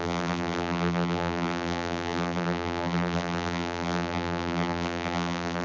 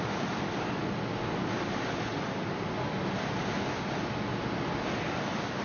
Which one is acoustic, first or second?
second